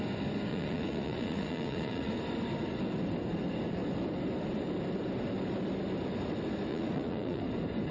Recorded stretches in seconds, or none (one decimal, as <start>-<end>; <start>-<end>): 0.0-0.5; 2.1-6.7; 7.4-7.9